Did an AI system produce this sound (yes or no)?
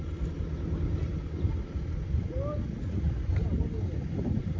no